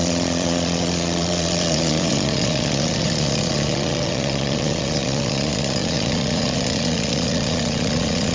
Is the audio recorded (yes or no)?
no